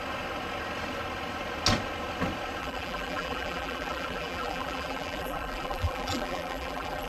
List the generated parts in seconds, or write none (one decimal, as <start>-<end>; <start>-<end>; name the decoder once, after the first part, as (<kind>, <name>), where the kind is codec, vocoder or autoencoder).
2.6-7.1 (vocoder, BigVGAN v2)